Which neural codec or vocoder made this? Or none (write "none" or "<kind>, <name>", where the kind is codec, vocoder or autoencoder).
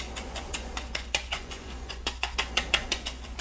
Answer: vocoder, Vocos